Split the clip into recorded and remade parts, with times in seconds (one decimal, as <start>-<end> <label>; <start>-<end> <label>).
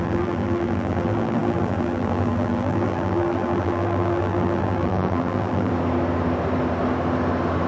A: 0.0-5.7 remade; 5.7-7.7 recorded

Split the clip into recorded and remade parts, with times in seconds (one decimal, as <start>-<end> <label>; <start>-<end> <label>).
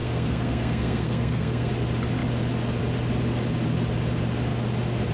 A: 0.0-1.7 remade; 1.7-5.1 recorded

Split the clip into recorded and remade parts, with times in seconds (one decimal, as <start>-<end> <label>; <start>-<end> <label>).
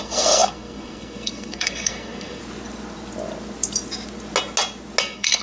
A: 0.0-2.4 remade; 2.4-5.0 recorded; 5.0-5.4 remade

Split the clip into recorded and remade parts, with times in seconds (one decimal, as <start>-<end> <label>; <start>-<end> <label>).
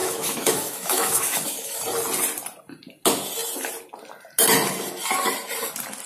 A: 0.0-1.8 remade; 1.8-6.1 recorded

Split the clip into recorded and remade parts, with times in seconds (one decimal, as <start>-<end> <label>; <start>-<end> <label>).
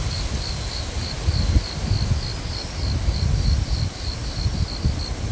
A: 0.0-5.3 recorded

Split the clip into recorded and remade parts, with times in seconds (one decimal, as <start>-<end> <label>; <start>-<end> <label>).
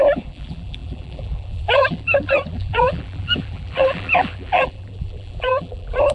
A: 0.0-6.1 remade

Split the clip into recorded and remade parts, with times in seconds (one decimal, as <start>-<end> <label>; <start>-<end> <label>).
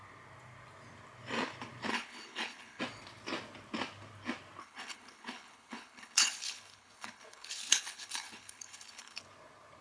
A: 0.0-1.9 recorded; 1.9-2.8 remade; 2.8-4.6 recorded; 4.6-9.2 remade; 9.2-9.8 recorded